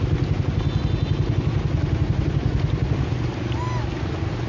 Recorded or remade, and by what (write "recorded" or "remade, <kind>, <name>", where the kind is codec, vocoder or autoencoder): recorded